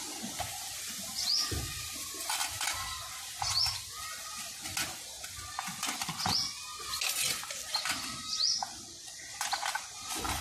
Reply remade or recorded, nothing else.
recorded